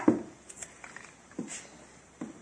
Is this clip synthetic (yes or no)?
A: no